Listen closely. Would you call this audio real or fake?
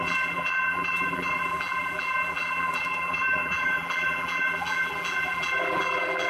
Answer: fake